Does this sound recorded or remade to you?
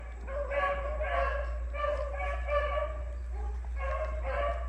recorded